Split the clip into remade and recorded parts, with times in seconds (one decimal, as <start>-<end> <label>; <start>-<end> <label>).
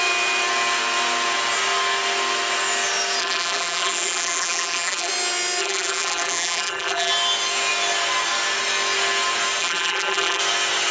0.0-3.2 recorded; 3.2-5.1 remade; 5.1-5.6 recorded; 5.6-7.1 remade; 7.1-9.6 recorded; 9.6-10.4 remade; 10.4-10.9 recorded